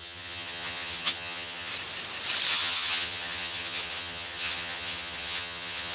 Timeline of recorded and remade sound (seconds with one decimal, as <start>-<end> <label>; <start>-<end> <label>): 0.0-1.7 remade; 1.7-2.5 recorded; 2.5-5.9 remade